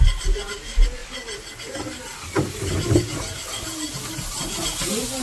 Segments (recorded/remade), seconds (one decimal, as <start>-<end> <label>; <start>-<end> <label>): 0.0-5.2 recorded